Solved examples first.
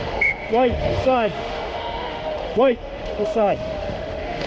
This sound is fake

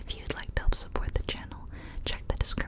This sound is real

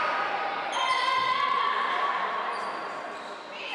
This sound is real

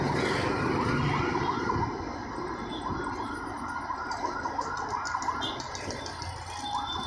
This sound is real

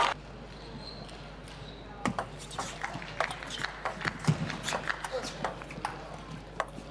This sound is real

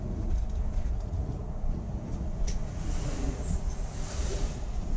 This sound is fake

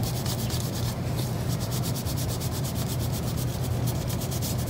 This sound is fake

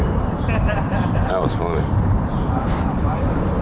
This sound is fake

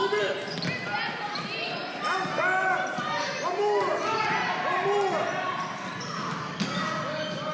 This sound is real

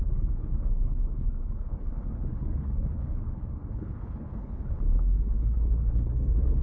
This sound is fake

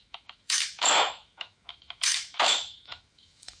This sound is fake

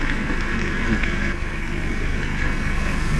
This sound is fake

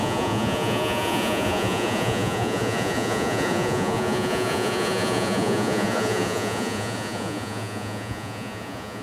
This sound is fake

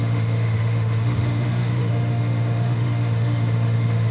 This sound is fake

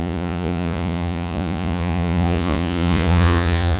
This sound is fake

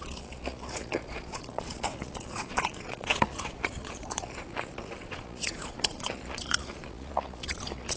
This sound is fake